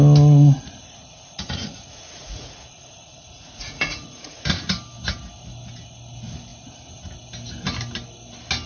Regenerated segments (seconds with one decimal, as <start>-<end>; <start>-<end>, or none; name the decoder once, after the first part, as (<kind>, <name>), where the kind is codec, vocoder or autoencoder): 0.8-4.7 (vocoder, Vocos)